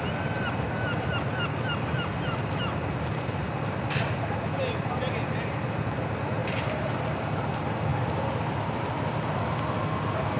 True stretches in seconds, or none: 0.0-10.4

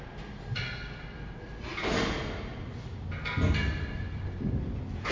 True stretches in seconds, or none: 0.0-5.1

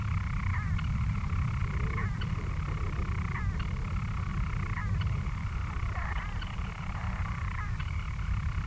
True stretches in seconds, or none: 0.0-1.6; 2.5-4.3

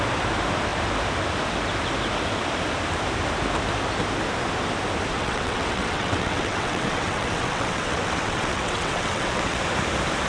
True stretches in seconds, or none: 0.0-5.1; 9.6-10.3

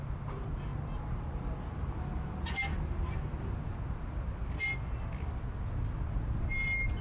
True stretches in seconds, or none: 0.0-7.0